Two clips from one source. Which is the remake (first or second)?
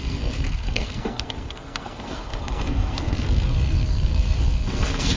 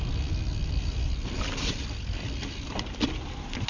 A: first